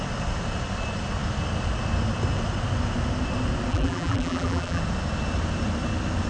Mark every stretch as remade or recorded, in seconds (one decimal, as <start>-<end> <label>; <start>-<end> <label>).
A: 0.0-3.7 recorded; 3.7-4.8 remade; 4.8-6.3 recorded